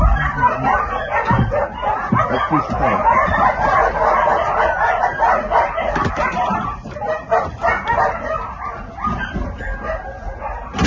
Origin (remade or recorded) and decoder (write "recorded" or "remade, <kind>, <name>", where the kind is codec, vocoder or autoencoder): recorded